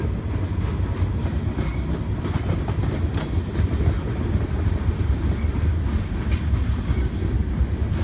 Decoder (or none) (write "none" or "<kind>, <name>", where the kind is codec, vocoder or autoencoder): none